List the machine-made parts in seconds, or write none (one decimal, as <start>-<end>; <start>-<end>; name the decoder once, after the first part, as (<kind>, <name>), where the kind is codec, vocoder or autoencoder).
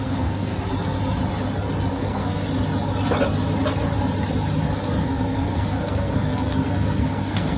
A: 0.0-0.5 (codec, SNAC); 1.9-2.4; 5.0-7.6